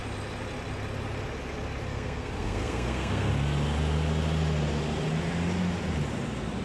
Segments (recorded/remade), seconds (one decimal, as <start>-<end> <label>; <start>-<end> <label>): 0.0-1.9 recorded; 1.9-3.3 remade; 3.3-6.6 recorded